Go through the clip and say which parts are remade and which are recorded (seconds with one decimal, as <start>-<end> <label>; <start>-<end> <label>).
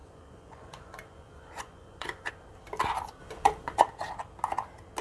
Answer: 0.0-2.3 remade; 2.3-3.2 recorded; 3.2-3.8 remade; 3.8-5.0 recorded